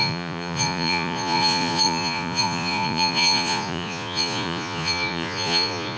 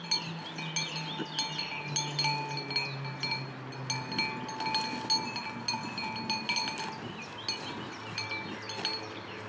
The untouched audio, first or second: second